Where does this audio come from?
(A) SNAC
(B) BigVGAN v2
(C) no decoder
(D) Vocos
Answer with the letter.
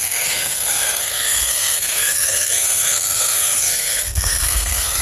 A